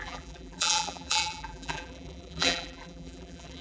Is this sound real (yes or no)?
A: no